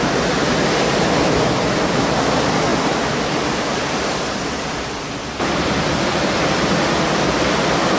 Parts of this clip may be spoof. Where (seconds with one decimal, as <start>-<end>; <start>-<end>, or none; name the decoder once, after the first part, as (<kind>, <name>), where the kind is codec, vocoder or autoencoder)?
none